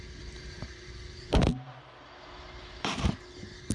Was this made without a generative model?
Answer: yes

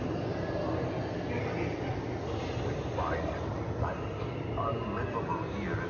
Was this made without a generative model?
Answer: yes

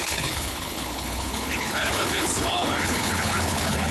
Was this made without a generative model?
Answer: no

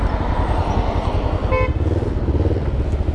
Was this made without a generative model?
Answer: yes